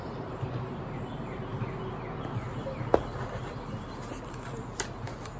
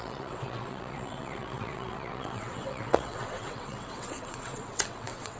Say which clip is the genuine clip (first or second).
first